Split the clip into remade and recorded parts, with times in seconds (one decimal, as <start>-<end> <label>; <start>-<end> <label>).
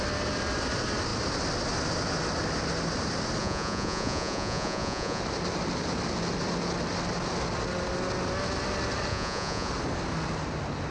0.0-3.4 recorded; 3.4-5.2 remade; 5.2-9.1 recorded; 9.1-9.7 remade; 9.7-10.9 recorded